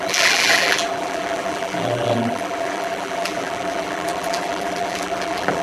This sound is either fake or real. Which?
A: fake